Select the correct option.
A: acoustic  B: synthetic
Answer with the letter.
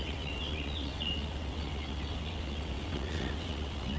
B